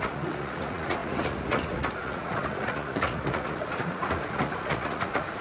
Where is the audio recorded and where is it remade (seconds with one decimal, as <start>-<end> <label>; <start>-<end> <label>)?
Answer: 0.0-5.4 remade